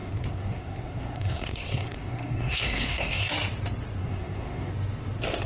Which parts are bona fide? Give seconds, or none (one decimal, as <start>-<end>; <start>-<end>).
3.3-4.0; 4.7-5.5